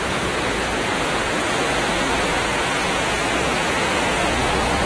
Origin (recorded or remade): remade